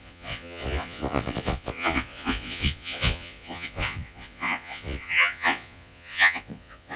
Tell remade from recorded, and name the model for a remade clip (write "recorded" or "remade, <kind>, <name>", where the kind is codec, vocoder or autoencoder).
remade, vocoder, Vocos